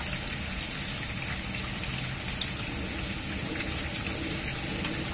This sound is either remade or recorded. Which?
recorded